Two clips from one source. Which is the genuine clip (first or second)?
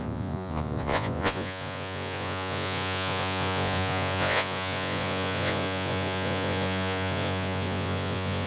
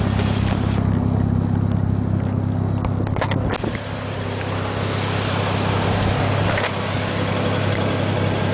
second